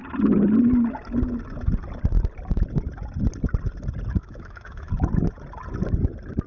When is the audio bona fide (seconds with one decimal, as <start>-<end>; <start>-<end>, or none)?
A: 0.0-4.2; 4.9-6.5